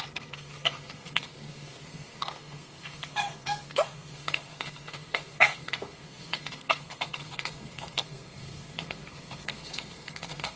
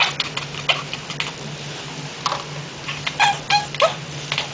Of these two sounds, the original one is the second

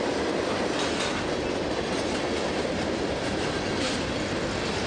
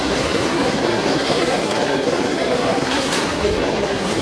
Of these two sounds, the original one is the first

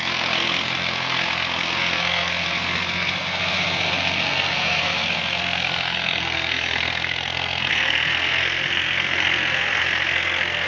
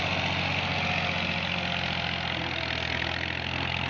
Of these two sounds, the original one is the second